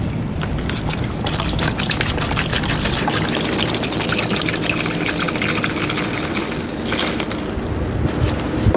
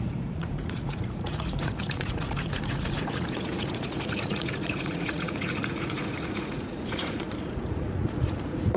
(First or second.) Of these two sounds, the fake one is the second